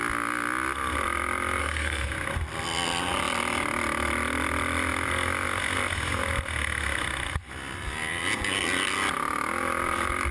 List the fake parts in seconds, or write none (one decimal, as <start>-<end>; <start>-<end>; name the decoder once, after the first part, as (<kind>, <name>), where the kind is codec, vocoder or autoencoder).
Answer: 1.6-2.1 (codec, SNAC)